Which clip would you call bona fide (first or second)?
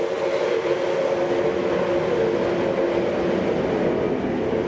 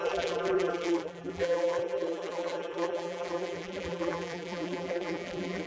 first